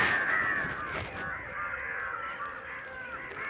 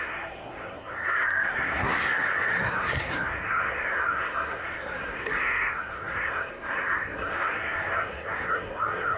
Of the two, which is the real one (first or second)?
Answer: first